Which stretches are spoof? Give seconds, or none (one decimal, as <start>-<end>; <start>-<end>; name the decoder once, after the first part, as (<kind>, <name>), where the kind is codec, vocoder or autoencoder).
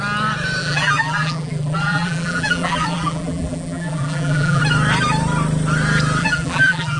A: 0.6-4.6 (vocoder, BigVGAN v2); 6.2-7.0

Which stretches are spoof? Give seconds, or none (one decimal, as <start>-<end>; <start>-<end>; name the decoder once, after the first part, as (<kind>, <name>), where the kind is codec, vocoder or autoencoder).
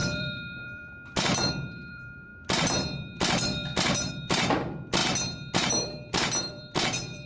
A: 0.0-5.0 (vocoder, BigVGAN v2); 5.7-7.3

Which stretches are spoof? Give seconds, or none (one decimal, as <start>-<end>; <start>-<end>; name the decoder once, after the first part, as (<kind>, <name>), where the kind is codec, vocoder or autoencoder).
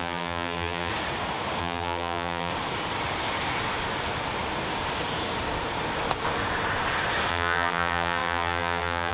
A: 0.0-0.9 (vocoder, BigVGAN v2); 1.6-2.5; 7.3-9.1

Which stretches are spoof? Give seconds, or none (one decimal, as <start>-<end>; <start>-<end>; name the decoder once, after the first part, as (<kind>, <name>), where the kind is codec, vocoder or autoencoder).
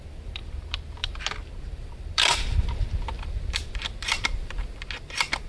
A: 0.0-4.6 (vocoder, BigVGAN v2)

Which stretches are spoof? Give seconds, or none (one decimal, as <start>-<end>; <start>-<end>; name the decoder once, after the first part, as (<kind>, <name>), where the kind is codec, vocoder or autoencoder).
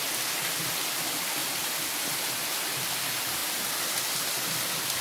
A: none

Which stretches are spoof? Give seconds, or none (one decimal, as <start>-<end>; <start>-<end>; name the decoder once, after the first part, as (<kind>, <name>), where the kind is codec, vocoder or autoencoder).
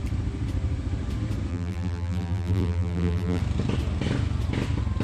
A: 1.5-3.4 (vocoder, BigVGAN v2)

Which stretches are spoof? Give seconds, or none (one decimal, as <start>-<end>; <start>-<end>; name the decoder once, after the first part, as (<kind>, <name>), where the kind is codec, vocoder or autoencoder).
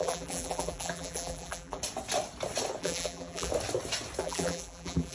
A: 0.0-1.8 (vocoder, BigVGAN v2); 2.8-3.5; 4.2-5.1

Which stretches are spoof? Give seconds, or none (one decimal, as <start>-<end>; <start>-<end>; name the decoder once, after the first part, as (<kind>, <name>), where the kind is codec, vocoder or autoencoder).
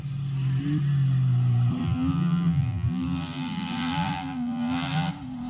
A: 1.8-5.1 (vocoder, BigVGAN v2)